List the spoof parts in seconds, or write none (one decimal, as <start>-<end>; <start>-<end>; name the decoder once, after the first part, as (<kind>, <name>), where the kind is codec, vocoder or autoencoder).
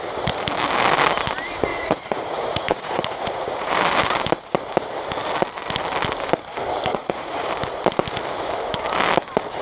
1.7-3.7 (vocoder, Vocos); 6.9-7.5